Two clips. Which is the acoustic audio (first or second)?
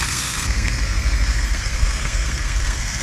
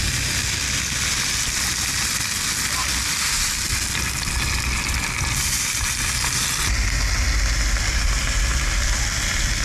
second